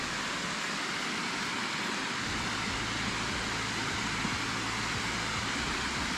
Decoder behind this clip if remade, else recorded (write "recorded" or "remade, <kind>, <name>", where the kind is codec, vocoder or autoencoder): recorded